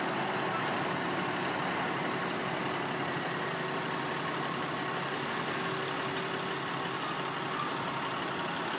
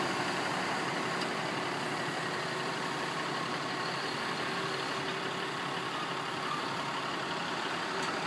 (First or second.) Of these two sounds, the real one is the first